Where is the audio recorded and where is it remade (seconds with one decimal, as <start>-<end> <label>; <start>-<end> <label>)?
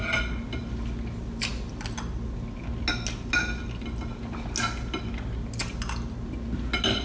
0.0-7.0 recorded